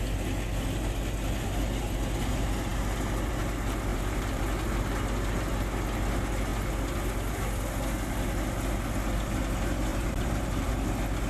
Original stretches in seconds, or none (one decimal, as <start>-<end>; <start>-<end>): 0.0-3.9; 4.4-9.9; 10.7-11.3